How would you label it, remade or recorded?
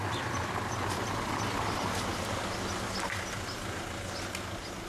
recorded